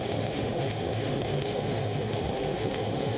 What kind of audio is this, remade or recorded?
remade